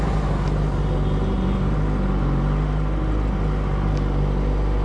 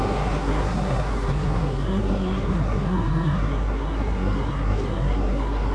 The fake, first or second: second